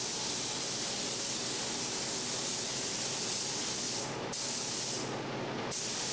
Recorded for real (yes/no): yes